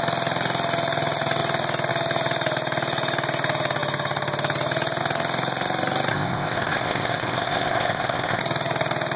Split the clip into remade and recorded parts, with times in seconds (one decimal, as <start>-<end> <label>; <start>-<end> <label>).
0.0-6.1 recorded; 6.1-8.4 remade; 8.4-9.2 recorded